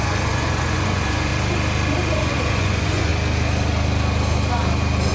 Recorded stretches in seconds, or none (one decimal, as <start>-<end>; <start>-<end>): 1.3-2.2; 3.1-5.1